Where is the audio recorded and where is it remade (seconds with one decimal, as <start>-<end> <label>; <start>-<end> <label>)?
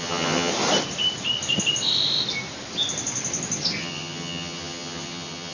0.0-0.5 remade; 0.5-3.8 recorded; 3.8-5.5 remade